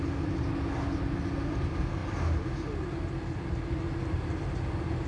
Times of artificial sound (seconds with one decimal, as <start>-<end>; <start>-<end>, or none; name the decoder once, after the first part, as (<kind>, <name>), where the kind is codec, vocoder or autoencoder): none